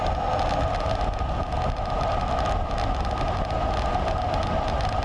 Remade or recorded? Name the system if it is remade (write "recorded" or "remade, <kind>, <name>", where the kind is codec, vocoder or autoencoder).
recorded